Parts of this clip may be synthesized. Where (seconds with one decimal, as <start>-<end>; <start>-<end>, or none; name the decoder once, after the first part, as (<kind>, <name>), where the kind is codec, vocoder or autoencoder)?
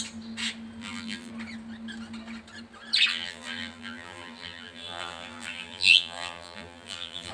0.8-1.3 (vocoder, BigVGAN v2); 3.1-7.3